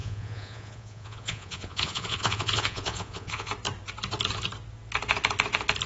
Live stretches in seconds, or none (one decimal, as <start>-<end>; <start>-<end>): 3.5-5.9

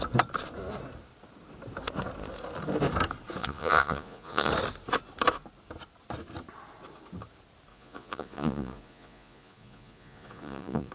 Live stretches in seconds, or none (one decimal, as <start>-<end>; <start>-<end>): 0.0-3.4; 4.5-7.7

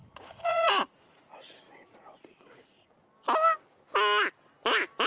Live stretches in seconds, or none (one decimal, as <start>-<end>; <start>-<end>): 2.9-5.1

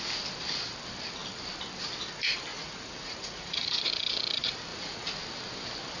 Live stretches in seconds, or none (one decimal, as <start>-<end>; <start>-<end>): 0.0-2.5; 3.9-4.7; 5.2-6.0

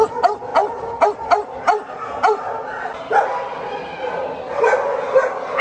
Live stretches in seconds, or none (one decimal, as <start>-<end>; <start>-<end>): 0.0-5.6

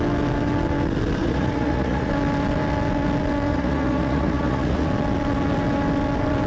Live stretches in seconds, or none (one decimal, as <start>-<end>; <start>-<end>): 0.0-1.2; 2.1-3.5; 4.9-6.5

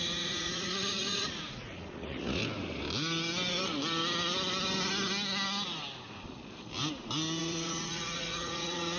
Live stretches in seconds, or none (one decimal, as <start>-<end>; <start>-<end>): 2.4-7.4

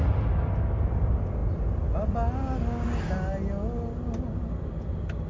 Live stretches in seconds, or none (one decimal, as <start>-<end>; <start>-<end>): 0.0-5.3